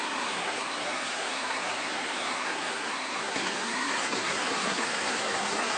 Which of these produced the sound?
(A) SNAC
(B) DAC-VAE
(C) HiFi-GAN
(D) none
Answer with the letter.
A